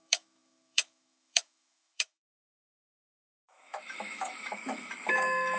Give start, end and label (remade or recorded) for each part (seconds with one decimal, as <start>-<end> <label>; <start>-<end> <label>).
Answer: 0.0-5.6 remade